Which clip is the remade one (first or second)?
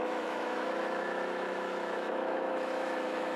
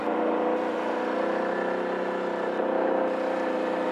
first